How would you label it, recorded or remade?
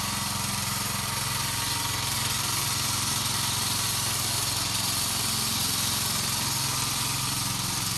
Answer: recorded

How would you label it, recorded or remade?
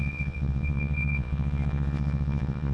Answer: remade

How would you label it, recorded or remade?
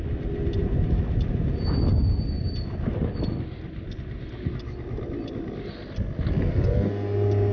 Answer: recorded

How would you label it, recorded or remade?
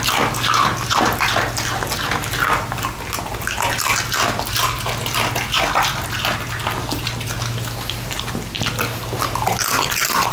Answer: recorded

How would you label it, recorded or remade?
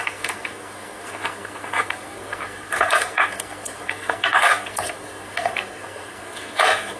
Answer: remade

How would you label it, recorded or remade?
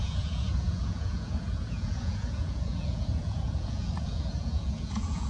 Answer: remade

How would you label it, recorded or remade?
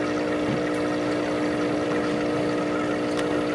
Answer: recorded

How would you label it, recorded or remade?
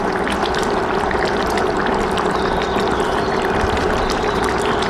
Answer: remade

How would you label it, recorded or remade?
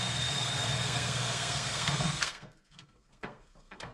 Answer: remade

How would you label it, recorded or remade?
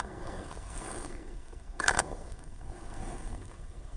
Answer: remade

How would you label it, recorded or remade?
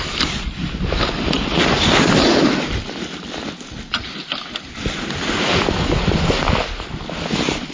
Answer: recorded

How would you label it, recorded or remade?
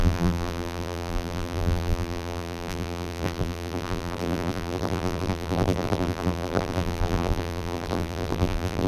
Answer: remade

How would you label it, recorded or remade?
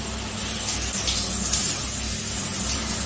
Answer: recorded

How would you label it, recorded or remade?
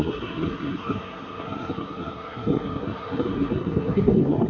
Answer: remade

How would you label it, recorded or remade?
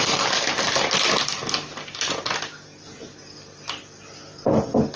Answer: recorded